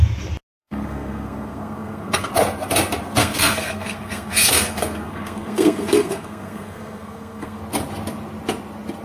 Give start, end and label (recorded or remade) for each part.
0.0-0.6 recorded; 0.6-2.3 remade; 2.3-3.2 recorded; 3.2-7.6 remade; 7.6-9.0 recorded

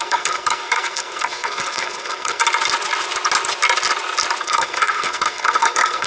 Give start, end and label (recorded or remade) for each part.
0.0-2.4 remade; 2.4-4.4 recorded; 4.4-6.1 remade

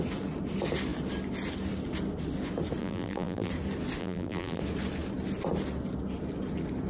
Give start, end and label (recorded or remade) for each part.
0.0-2.8 recorded; 2.8-3.5 remade; 3.5-4.0 recorded; 4.0-4.6 remade; 4.6-6.9 recorded

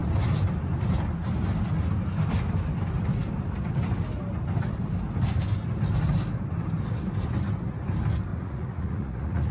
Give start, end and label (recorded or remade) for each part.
0.0-8.3 recorded; 8.3-9.5 remade

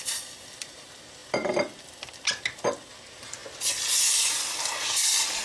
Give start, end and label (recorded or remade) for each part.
0.0-5.4 recorded

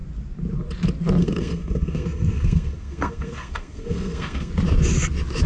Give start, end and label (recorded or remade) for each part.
0.0-1.2 recorded; 1.2-4.5 remade; 4.5-5.5 recorded

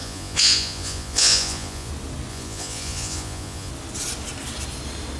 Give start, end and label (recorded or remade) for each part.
0.0-1.9 remade; 1.9-2.3 recorded; 2.3-3.7 remade; 3.7-5.2 recorded